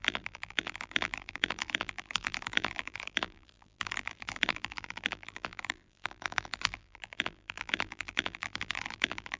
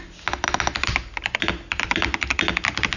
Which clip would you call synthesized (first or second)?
first